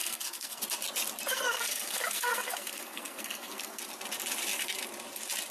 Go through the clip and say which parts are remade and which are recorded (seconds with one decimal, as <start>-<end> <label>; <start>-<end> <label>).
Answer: 0.0-0.6 remade; 0.6-1.3 recorded; 1.3-3.8 remade; 3.8-5.5 recorded